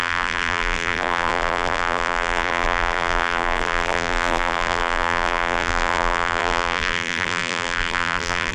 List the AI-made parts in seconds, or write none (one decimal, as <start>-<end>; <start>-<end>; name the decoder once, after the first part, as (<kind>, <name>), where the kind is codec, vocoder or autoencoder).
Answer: 0.0-8.5 (vocoder, BigVGAN v2)

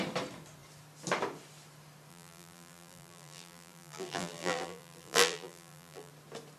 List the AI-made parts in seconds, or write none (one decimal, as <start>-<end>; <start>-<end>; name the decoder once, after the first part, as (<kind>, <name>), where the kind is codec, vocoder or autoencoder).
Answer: 2.1-6.1 (vocoder, BigVGAN v2)

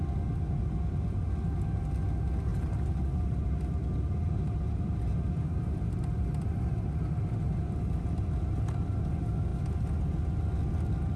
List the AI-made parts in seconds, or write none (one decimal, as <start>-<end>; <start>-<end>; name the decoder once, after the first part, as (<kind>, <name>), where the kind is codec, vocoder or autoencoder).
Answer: 2.5-7.2 (vocoder, BigVGAN v2)

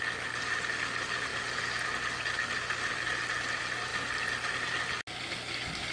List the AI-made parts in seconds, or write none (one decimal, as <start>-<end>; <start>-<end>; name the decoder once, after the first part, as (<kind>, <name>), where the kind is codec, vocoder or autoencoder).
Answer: none

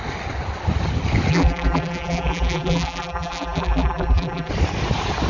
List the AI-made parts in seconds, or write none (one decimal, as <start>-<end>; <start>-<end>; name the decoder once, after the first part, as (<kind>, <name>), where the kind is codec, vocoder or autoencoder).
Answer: 1.3-4.5 (vocoder, BigVGAN v2)

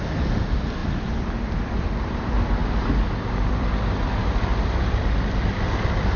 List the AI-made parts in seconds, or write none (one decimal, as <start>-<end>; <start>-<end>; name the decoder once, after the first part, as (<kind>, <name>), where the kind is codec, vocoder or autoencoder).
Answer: 0.0-2.6 (vocoder, BigVGAN v2); 3.3-4.5; 5.4-6.2

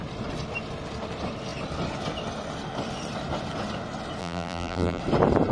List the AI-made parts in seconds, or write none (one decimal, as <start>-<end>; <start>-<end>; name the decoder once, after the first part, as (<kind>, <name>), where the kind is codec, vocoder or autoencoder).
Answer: 4.2-5.0 (vocoder, BigVGAN v2)

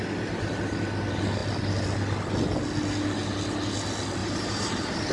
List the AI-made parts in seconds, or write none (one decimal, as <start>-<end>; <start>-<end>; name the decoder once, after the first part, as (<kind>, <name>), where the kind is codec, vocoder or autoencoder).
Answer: 4.2-5.1 (vocoder, BigVGAN v2)